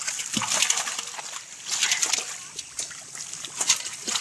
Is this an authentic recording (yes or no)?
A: yes